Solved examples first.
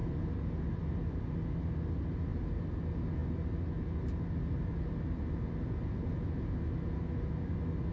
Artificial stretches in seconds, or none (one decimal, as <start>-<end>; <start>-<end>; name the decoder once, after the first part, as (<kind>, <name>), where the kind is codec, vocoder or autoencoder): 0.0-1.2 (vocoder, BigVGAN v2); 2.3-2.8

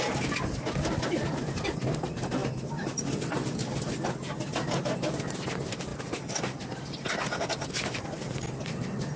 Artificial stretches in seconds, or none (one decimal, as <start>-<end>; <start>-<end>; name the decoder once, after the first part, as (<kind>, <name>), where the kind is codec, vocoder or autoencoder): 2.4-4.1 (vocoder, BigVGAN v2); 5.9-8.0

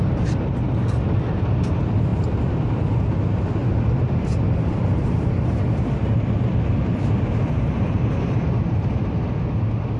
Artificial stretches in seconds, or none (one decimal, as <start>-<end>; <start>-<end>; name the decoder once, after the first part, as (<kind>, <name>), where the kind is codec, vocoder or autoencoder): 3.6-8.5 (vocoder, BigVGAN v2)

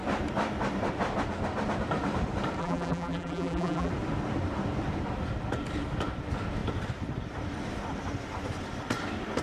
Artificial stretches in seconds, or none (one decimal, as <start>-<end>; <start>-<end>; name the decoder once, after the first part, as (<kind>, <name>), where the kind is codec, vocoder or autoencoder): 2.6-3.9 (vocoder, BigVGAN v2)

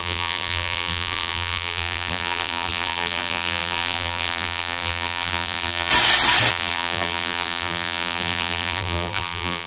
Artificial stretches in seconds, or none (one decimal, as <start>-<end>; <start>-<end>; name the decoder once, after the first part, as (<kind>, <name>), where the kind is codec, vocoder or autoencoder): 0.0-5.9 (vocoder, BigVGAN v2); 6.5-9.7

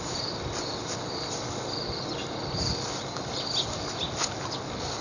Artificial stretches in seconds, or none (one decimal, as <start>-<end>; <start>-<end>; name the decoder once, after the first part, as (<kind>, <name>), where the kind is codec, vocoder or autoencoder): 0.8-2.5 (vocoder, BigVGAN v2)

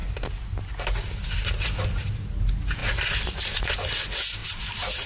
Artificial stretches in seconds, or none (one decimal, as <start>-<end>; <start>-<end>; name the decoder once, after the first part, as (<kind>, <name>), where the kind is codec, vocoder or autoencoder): 0.0-0.5 (vocoder, BigVGAN v2); 2.8-3.7; 4.4-5.1

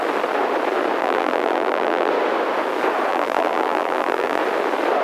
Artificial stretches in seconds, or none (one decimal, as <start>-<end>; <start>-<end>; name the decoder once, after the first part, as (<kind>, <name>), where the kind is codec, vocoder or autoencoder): 1.0-2.1 (vocoder, BigVGAN v2); 3.1-4.4